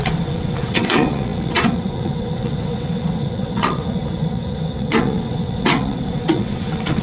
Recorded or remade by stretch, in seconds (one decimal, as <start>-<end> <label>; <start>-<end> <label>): 0.0-7.0 remade